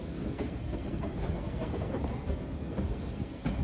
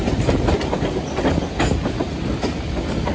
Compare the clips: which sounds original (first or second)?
second